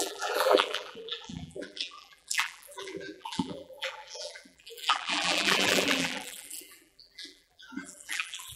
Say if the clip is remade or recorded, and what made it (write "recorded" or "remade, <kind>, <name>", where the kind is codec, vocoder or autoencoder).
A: remade, vocoder, BigVGAN v2